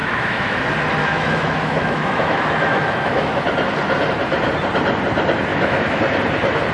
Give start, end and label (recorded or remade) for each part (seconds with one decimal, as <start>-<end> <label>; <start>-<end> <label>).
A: 0.0-0.6 remade; 0.6-1.0 recorded; 1.0-3.4 remade; 3.4-5.5 recorded; 5.5-6.0 remade; 6.0-6.7 recorded